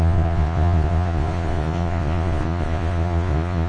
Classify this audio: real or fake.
fake